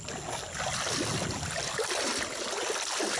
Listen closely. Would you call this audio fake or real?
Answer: real